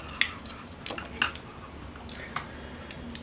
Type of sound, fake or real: real